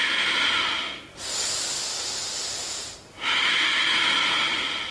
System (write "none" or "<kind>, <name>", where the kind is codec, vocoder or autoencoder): none